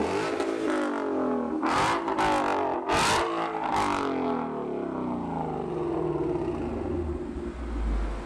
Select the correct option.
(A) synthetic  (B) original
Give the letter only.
B